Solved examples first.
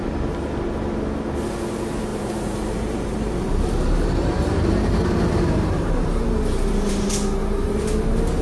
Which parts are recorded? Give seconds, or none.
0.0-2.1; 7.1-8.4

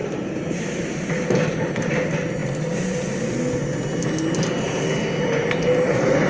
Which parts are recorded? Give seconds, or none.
0.7-6.3

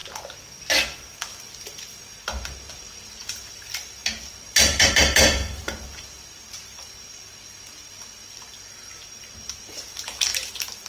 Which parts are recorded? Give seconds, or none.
1.9-2.8; 10.3-10.9